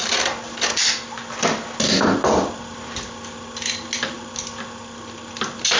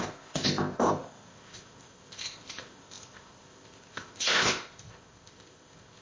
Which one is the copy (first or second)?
second